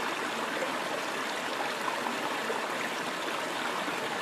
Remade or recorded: recorded